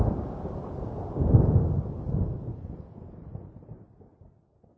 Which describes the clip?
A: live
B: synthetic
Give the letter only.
A